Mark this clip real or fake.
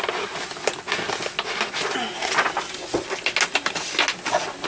real